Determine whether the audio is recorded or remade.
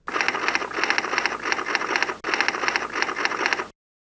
recorded